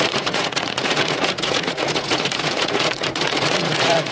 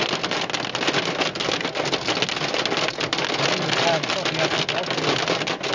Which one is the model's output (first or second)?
first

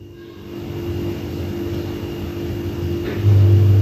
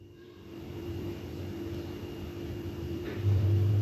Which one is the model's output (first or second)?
second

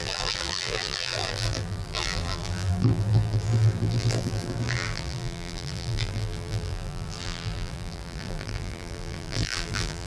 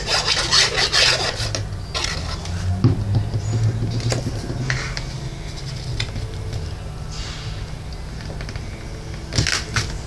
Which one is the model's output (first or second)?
first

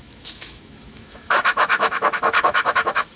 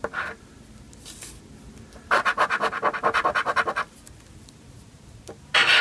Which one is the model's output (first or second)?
first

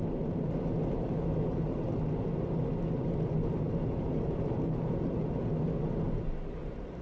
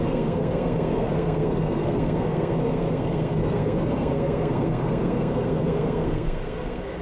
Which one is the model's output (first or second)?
second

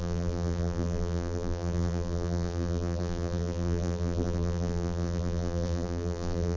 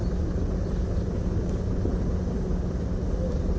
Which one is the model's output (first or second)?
first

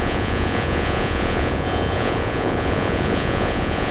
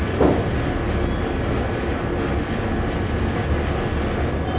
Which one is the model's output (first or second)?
first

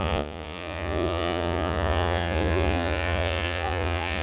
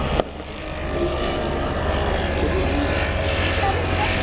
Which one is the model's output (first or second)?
first